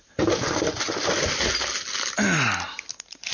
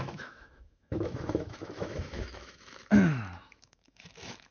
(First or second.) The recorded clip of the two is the first